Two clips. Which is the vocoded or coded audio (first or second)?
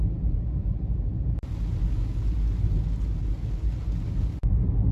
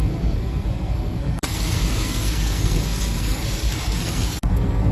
second